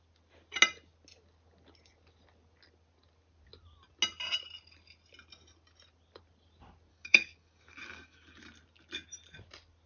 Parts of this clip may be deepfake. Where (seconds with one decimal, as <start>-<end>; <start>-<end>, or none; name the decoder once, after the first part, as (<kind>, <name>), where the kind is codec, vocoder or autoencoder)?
6.9-8.4 (codec, DAC)